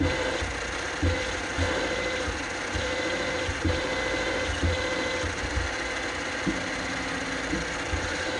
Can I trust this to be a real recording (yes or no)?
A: yes